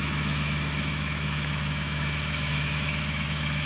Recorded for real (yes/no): no